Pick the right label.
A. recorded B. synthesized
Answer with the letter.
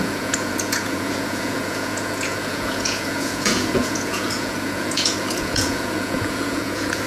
B